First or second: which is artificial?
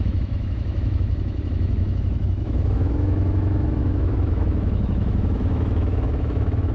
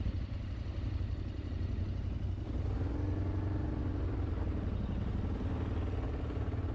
first